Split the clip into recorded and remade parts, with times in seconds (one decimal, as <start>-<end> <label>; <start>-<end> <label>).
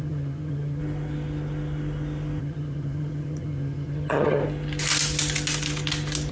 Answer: 0.0-0.8 remade; 0.8-2.4 recorded; 2.4-4.4 remade; 4.4-6.3 recorded